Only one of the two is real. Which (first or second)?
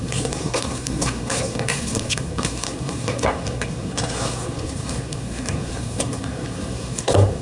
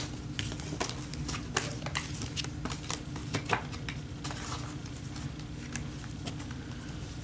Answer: second